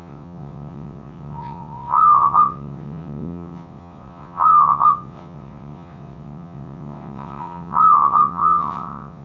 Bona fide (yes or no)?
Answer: no